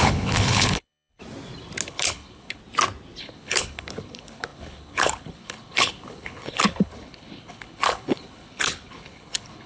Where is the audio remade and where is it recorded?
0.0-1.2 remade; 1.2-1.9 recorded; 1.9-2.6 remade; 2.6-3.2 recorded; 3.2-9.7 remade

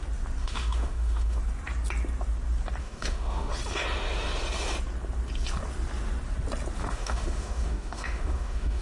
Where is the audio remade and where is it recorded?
0.0-0.4 recorded; 0.4-1.4 remade; 1.4-2.8 recorded; 2.8-3.5 remade; 3.5-6.8 recorded; 6.8-8.8 remade

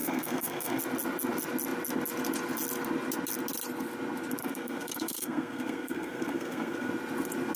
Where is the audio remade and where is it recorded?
0.0-0.8 remade; 0.8-4.4 recorded; 4.4-6.9 remade; 6.9-7.6 recorded

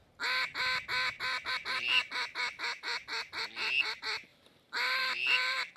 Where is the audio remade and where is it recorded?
0.0-1.5 recorded; 1.5-5.8 remade